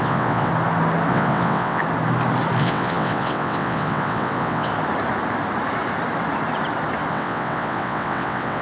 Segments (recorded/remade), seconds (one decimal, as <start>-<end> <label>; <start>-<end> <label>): 0.0-0.5 remade; 0.5-1.1 recorded; 1.1-1.8 remade; 1.8-2.6 recorded; 2.6-4.7 remade; 4.7-7.1 recorded; 7.1-8.6 remade